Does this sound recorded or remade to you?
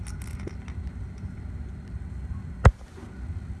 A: recorded